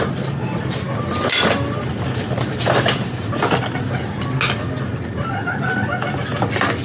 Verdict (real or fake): real